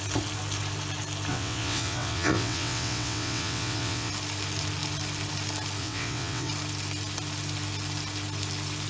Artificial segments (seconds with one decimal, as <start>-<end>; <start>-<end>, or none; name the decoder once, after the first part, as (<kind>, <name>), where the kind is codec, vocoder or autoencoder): 1.3-4.1 (vocoder, WaveNeXt); 5.8-6.5